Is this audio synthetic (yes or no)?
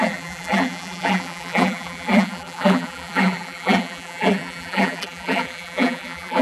yes